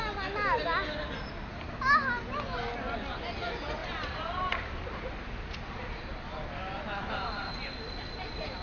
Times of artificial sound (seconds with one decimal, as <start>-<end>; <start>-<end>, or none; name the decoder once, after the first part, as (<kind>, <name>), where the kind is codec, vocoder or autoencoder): 3.8-4.8 (vocoder, BigVGAN v2)